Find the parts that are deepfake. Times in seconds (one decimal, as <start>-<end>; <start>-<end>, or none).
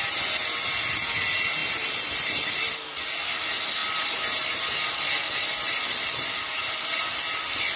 1.6-3.1; 3.8-7.8